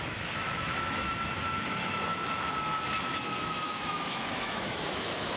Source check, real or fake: fake